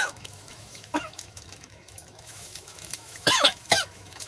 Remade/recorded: remade